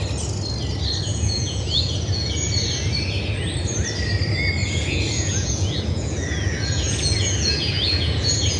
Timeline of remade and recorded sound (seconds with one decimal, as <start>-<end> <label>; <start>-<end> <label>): 0.0-1.1 recorded; 1.1-2.3 remade; 2.3-4.6 recorded; 4.6-8.6 remade